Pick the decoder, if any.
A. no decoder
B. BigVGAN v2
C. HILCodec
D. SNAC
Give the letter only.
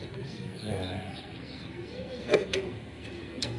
D